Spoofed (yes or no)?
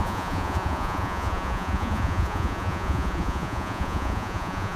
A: yes